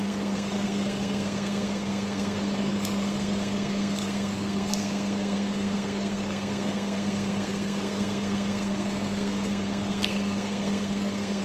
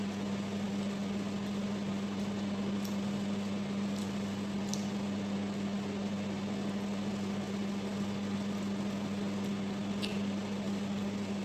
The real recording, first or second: second